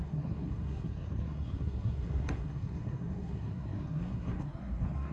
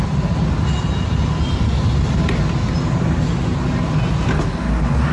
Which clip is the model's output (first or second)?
first